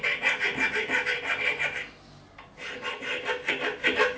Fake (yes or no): no